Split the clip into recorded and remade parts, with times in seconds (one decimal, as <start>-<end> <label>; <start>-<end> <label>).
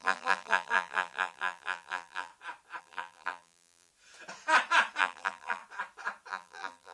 0.0-2.3 remade; 2.3-2.8 recorded; 2.8-3.9 remade; 3.9-5.0 recorded; 5.0-5.6 remade; 5.6-6.3 recorded; 6.3-6.9 remade